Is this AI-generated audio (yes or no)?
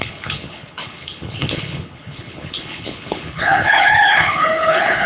yes